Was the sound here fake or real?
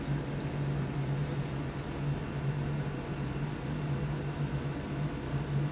real